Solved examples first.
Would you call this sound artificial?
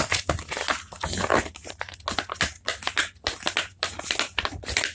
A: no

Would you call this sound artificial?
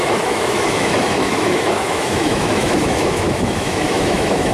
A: yes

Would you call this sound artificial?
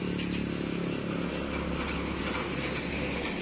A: no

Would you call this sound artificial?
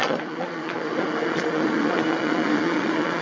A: yes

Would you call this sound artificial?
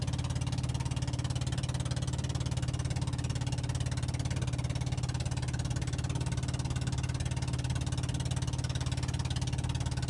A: no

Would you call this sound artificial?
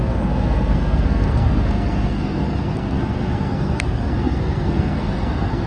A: yes